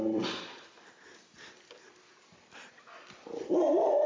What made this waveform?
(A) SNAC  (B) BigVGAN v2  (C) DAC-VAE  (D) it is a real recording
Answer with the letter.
B